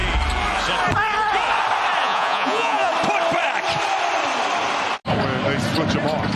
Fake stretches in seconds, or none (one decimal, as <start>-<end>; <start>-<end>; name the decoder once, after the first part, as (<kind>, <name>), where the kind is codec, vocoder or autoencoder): 2.0-2.9 (vocoder, Vocos)